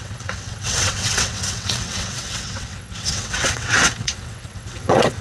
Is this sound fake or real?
fake